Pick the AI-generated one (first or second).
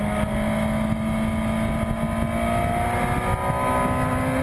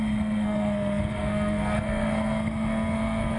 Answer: second